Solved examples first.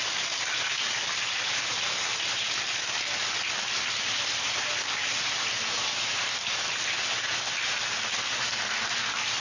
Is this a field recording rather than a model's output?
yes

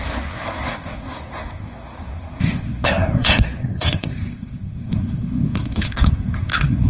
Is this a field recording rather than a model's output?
no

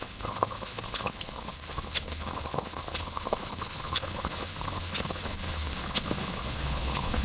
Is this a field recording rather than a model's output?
no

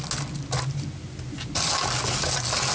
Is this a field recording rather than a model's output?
yes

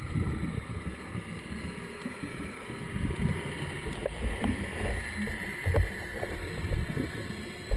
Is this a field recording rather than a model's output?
no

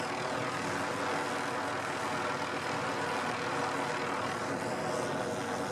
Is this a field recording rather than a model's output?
yes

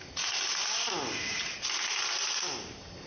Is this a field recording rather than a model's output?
yes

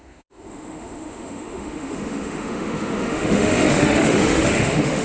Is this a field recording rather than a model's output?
no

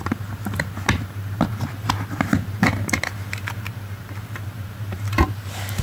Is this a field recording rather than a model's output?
no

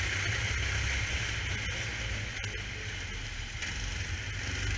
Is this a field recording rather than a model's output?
yes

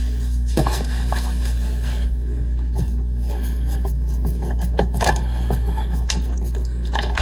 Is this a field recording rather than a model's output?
no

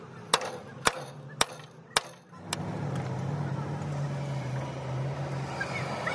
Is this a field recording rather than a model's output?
yes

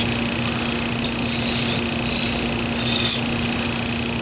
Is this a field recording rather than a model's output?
yes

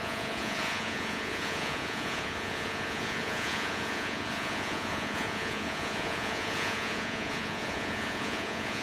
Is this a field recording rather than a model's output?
no